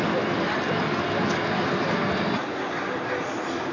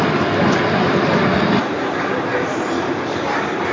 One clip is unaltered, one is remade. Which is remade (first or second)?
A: second